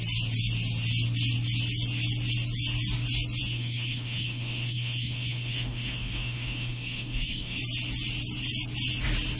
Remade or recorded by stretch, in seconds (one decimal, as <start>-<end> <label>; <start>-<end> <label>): 0.0-3.4 recorded; 3.4-7.6 remade; 7.6-9.4 recorded